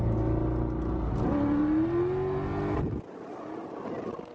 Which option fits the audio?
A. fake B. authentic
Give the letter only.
B